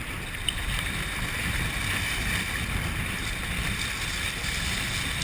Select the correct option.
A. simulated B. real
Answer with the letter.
B